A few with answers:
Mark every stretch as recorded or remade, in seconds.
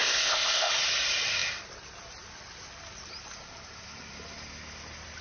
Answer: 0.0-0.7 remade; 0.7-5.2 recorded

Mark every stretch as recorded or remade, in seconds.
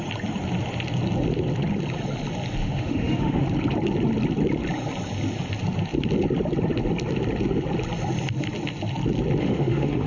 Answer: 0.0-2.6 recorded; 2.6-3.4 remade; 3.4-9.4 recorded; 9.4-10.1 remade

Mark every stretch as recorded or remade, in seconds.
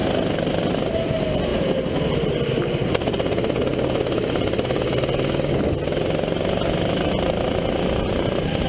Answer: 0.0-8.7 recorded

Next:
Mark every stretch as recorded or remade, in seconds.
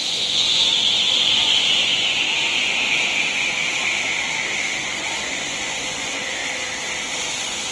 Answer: 0.0-3.6 remade; 3.6-4.8 recorded; 4.8-6.4 remade; 6.4-7.2 recorded; 7.2-7.7 remade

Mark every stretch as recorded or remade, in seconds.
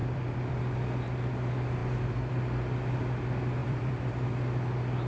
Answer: 0.0-0.6 remade; 0.6-3.6 recorded; 3.6-4.1 remade; 4.1-5.1 recorded